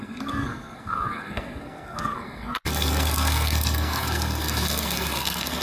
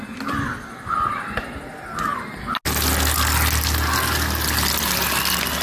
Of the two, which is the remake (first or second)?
first